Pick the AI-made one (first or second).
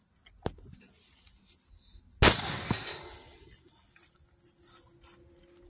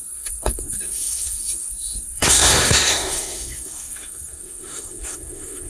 second